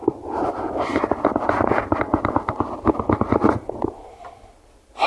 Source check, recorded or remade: recorded